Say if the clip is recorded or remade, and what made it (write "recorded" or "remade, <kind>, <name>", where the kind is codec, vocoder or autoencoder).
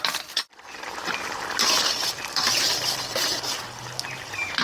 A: recorded